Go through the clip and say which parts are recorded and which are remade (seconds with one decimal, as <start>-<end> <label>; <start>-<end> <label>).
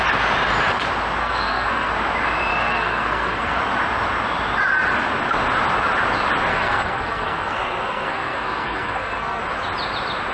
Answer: 0.0-1.2 recorded; 1.2-1.9 remade; 1.9-2.5 recorded; 2.5-3.6 remade; 3.6-6.5 recorded; 6.5-9.4 remade; 9.4-10.3 recorded